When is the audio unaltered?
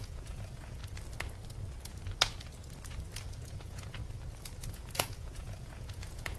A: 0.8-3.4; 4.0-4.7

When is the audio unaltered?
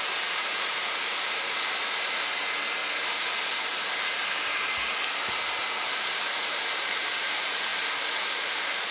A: 2.8-6.2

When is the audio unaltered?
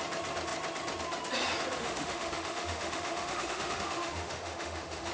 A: 0.0-1.8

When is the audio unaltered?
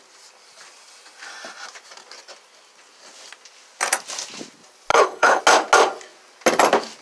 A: 0.0-4.9; 5.4-7.0